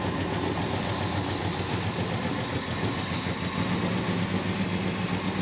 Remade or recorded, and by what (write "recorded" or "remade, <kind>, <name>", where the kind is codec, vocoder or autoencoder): recorded